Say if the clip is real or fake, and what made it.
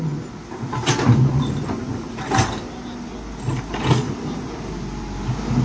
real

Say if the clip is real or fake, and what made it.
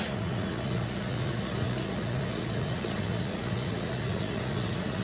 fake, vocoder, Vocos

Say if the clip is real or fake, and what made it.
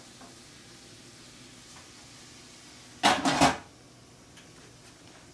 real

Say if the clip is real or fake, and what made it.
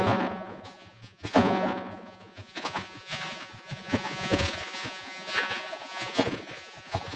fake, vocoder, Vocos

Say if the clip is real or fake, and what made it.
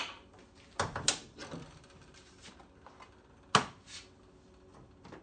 real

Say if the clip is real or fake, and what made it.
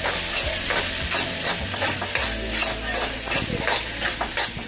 real